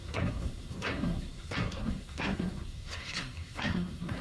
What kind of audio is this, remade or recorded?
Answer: remade